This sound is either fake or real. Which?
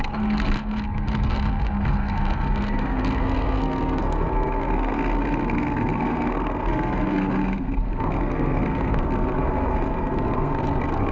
fake